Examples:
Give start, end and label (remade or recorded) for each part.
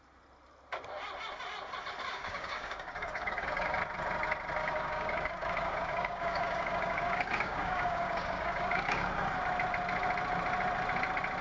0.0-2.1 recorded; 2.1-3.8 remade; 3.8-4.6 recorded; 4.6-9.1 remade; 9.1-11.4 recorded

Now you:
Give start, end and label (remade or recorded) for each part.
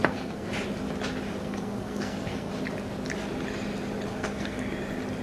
0.0-0.5 remade; 0.5-1.4 recorded; 1.4-2.5 remade; 2.5-4.1 recorded; 4.1-4.7 remade; 4.7-5.2 recorded